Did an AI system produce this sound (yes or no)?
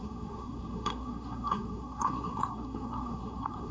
yes